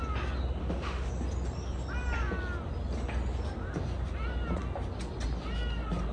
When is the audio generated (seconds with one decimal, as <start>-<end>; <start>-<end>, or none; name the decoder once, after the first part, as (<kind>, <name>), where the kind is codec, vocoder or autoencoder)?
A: 0.6-1.1 (autoencoder, DAC-VAE)